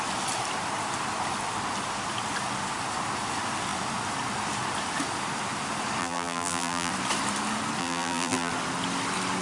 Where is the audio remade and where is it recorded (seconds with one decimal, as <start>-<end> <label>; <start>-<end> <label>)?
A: 0.0-6.0 recorded; 6.0-6.9 remade; 6.9-7.8 recorded; 7.8-8.5 remade; 8.5-9.4 recorded

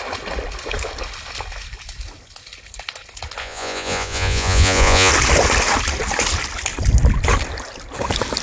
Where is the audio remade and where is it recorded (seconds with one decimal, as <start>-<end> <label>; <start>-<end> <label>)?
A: 0.0-3.4 recorded; 3.4-5.1 remade; 5.1-8.4 recorded

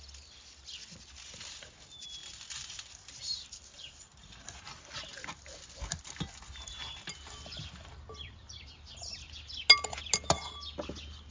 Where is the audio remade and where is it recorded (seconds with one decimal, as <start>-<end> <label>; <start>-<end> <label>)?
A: 0.0-2.2 recorded; 2.2-4.6 remade; 4.6-6.8 recorded; 6.8-9.5 remade; 9.5-11.3 recorded

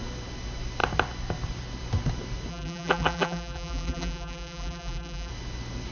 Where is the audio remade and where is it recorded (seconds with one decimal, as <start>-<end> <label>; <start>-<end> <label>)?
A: 0.0-2.5 recorded; 2.5-5.3 remade; 5.3-5.9 recorded